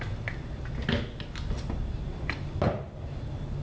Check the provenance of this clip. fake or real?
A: real